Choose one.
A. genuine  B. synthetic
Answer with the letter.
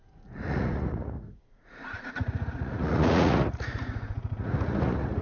B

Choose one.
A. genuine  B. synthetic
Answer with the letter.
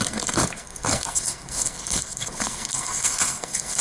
B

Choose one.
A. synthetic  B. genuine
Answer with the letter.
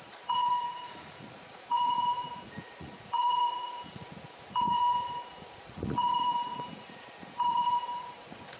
A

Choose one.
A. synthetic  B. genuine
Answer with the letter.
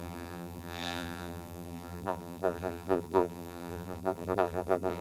A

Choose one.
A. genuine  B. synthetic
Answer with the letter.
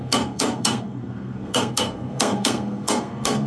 B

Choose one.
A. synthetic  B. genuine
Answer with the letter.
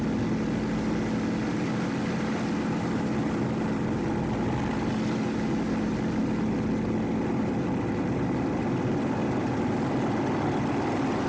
B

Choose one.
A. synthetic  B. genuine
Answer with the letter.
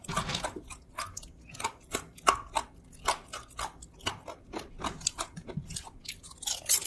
B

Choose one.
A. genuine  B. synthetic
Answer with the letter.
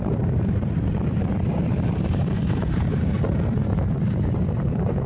B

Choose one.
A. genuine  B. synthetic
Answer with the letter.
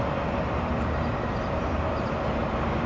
B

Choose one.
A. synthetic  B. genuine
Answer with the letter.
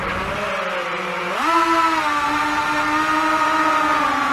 B